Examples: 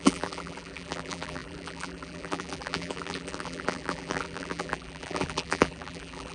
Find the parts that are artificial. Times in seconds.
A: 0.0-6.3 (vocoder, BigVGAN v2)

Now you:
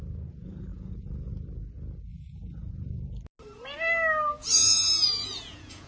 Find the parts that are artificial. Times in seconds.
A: 0.7-1.3 (vocoder, Vocos); 2.1-3.1; 4.4-5.9

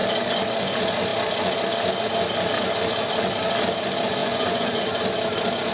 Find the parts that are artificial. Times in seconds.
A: 4.2-5.0 (vocoder, Vocos)

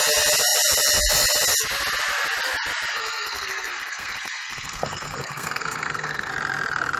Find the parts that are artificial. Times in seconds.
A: 2.9-6.3 (codec, SNAC)

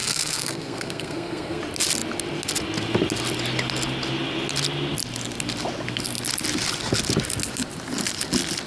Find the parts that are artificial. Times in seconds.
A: 0.0-1.6 (codec, SNAC)